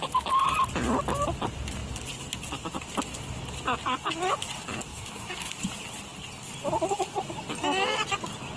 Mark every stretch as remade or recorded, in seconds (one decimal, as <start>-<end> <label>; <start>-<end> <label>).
0.0-4.9 recorded; 4.9-5.5 remade; 5.5-8.6 recorded